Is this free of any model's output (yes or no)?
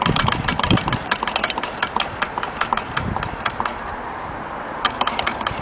no